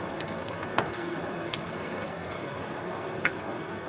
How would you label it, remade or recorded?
remade